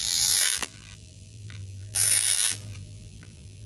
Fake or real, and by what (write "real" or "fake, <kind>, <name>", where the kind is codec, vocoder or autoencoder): fake, vocoder, BigVGAN v2